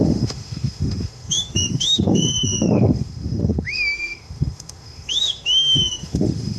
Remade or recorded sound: remade